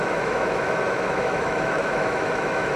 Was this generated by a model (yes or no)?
yes